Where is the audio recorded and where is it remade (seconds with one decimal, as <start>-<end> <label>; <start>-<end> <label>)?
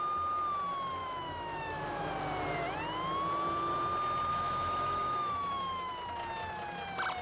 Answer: 0.0-1.0 recorded; 1.0-2.1 remade; 2.1-4.3 recorded; 4.3-5.9 remade; 5.9-7.2 recorded